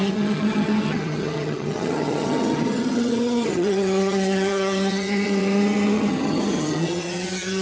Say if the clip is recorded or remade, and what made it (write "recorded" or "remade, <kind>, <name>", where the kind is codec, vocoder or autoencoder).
remade, vocoder, HiFi-GAN